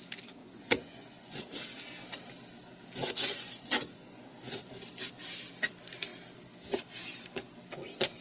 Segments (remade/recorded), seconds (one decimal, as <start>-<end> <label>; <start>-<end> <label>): 0.0-0.4 recorded; 0.4-1.4 remade; 1.4-3.0 recorded; 3.0-4.7 remade; 4.7-8.2 recorded